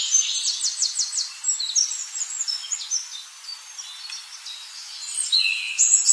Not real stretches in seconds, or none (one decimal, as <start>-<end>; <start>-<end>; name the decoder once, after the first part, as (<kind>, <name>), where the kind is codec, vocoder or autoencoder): 0.0-1.1 (vocoder, Vocos); 1.8-3.5; 4.7-6.1